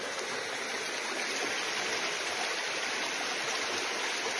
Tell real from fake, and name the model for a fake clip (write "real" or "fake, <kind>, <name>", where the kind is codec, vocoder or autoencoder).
real